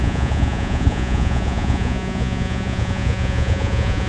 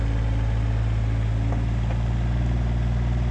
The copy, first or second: first